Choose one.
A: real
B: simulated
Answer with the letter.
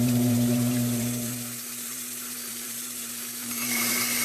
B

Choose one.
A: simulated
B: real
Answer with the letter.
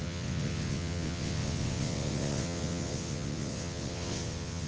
A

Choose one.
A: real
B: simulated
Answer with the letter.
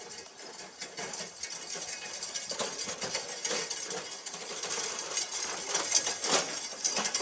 A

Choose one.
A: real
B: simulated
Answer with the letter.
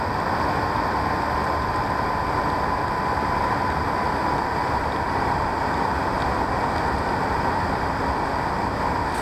A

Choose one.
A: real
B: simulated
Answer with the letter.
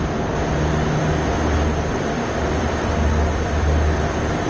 B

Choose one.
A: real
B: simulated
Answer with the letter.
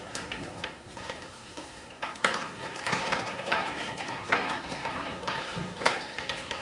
B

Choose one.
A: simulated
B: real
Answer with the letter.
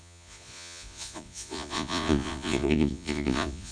A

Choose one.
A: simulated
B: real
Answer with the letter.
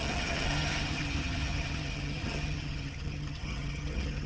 A